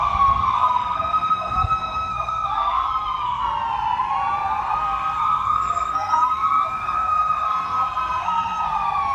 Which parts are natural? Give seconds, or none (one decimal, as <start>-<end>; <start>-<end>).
3.4-4.6